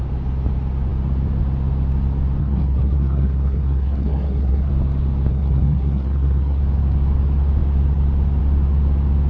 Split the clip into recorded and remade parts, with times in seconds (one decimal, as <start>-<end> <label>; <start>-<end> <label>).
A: 0.0-2.4 recorded; 2.4-4.7 remade; 4.7-5.3 recorded; 5.3-6.6 remade; 6.6-9.3 recorded